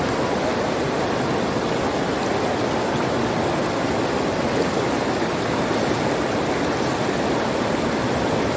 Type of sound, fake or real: real